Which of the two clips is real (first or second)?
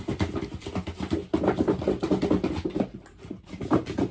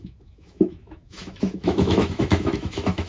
first